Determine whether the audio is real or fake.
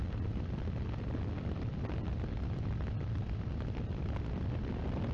real